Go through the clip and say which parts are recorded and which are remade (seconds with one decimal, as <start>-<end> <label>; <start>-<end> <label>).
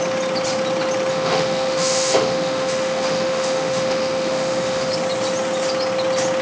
0.0-1.1 recorded; 1.1-4.9 remade; 4.9-6.4 recorded